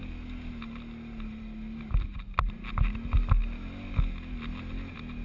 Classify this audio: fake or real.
real